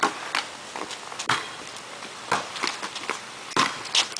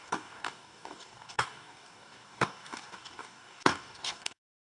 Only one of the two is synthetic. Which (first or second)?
second